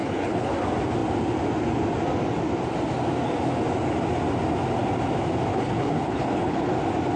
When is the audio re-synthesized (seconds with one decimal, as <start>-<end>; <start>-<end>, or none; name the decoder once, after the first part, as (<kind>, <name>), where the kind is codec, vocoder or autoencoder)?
0.0-0.5 (codec, HILCodec); 5.5-6.7